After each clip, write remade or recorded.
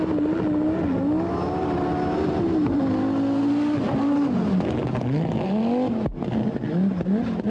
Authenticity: recorded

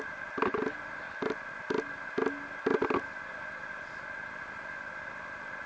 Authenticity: recorded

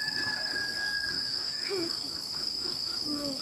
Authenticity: remade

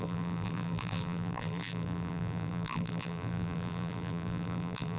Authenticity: remade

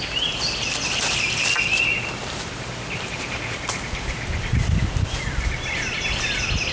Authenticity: recorded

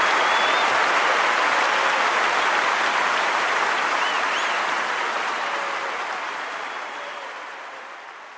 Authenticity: recorded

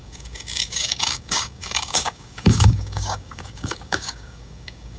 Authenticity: remade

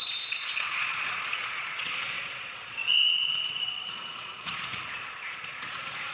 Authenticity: remade